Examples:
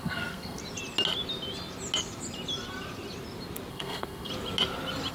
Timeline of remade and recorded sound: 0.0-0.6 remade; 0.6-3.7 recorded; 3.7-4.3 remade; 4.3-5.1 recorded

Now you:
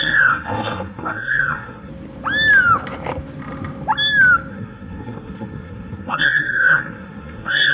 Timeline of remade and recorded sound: 0.0-1.9 remade; 1.9-4.5 recorded; 4.5-7.7 remade

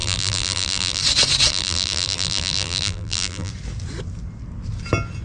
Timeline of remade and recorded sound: 0.0-1.0 remade; 1.0-1.5 recorded; 1.5-3.5 remade; 3.5-5.2 recorded

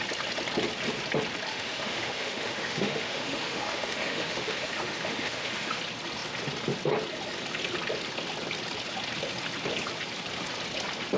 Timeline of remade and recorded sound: 0.0-1.5 recorded; 1.5-5.8 remade; 5.8-11.2 recorded

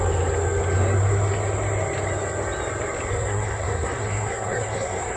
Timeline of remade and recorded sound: 0.0-3.1 recorded; 3.1-5.2 remade

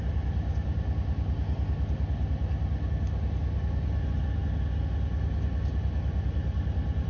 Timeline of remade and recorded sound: 0.0-7.1 recorded

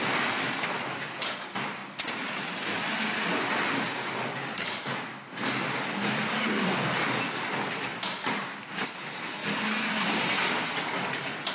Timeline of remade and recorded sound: 0.0-11.5 recorded